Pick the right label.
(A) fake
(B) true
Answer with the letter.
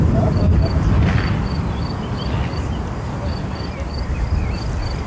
B